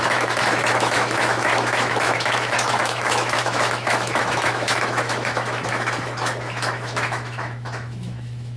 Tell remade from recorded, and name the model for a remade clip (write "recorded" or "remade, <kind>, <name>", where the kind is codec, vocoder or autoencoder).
remade, autoencoder, DAC-VAE